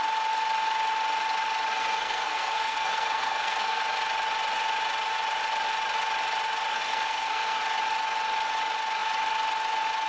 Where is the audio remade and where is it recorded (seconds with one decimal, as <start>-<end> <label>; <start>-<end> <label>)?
0.0-1.7 recorded; 1.7-3.8 remade; 3.8-6.7 recorded; 6.7-7.6 remade; 7.6-10.1 recorded